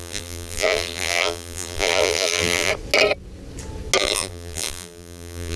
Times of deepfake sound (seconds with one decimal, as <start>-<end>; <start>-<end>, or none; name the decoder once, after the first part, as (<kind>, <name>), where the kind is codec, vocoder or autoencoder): 0.0-2.7 (vocoder, BigVGAN v2); 4.0-5.6